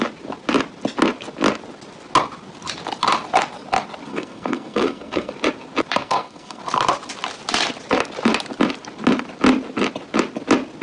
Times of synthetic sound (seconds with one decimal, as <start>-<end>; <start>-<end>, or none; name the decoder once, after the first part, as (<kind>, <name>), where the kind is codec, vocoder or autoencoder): 4.1-5.3 (codec, SNAC); 6.0-6.6